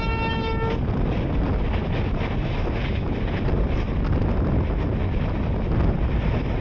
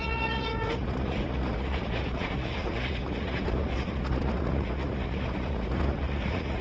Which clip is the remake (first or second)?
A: second